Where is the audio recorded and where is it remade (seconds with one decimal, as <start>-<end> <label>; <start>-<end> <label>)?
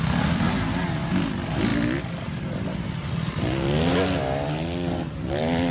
0.0-5.7 recorded